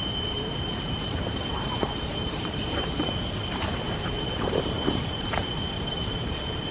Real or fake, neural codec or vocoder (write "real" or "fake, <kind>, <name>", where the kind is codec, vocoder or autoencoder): fake, vocoder, BigVGAN v2